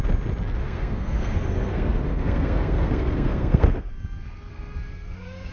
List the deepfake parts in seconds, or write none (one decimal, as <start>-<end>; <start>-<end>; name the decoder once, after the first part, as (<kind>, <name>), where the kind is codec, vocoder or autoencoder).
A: 0.6-3.9 (codec, SNAC); 4.5-5.5